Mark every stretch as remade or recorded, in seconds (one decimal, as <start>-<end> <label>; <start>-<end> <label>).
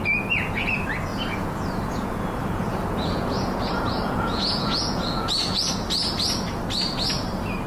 0.0-1.1 recorded; 1.1-5.7 remade; 5.7-7.7 recorded